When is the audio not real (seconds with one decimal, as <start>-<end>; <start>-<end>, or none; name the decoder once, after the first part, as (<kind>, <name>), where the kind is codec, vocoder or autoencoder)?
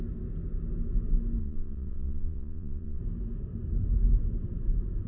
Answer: 1.4-3.0 (vocoder, Vocos)